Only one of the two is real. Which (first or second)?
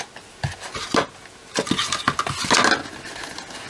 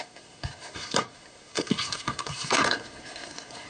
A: first